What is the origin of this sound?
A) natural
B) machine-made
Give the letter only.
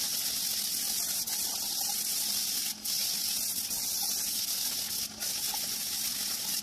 A